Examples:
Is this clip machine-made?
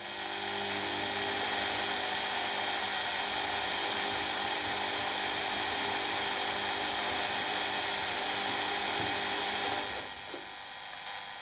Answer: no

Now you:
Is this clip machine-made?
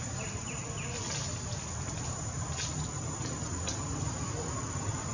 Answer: no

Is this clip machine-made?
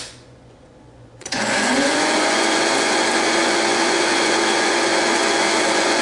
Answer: yes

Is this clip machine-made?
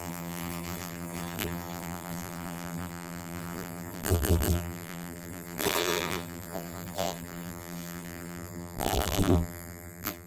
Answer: yes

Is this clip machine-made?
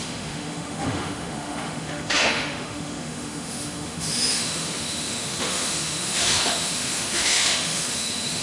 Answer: yes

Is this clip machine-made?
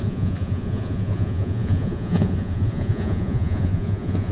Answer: yes